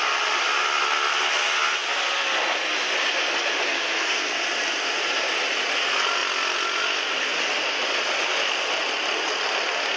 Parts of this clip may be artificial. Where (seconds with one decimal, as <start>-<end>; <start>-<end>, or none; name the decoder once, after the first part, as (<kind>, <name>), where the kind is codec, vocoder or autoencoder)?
3.6-4.3 (codec, SNAC)